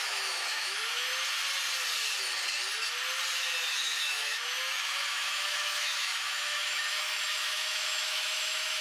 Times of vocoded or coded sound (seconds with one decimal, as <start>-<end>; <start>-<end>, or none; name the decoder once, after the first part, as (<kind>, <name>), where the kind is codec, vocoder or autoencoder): 0.0-1.1 (autoencoder, DAC-VAE); 3.7-8.8